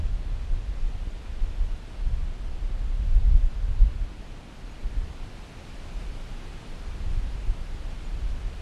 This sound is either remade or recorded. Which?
recorded